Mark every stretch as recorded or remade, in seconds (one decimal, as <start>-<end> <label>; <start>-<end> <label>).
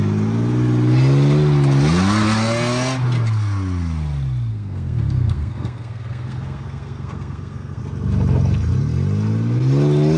0.0-4.5 recorded; 4.5-7.8 remade; 7.8-10.2 recorded